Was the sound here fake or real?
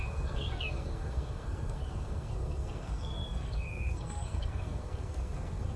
fake